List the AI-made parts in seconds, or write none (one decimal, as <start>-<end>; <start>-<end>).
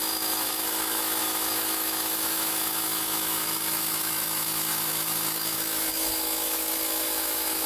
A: 0.0-7.7